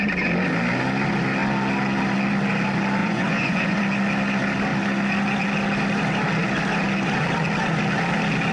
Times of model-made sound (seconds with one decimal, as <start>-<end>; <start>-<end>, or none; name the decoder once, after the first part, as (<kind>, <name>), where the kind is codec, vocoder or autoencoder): 3.0-3.8 (vocoder, Vocos)